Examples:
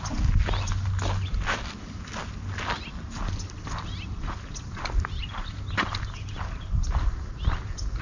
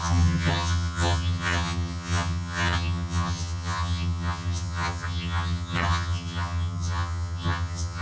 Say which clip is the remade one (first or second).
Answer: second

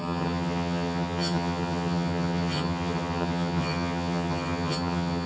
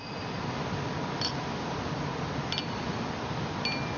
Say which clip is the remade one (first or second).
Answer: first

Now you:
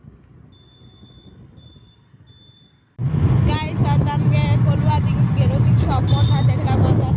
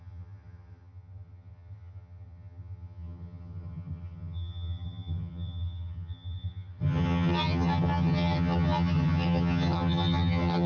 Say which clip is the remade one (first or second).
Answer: second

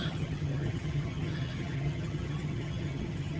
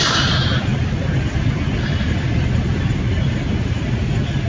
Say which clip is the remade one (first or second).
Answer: first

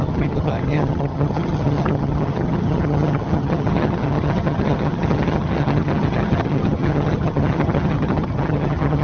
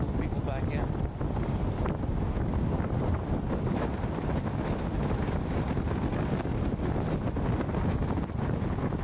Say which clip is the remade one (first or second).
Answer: first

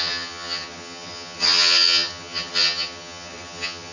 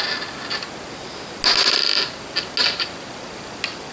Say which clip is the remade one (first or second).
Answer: first